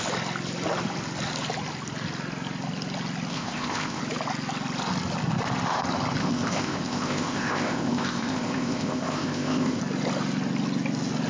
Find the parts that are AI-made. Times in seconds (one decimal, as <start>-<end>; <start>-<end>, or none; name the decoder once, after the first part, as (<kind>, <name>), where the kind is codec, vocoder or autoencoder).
3.3-4.0 (codec, ZipCodec); 6.2-9.8